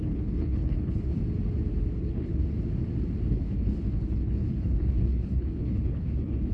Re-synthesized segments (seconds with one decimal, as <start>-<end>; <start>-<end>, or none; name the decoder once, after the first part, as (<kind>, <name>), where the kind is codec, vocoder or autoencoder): 0.0-1.2 (codec, HILCodec); 2.0-2.4; 3.3-6.5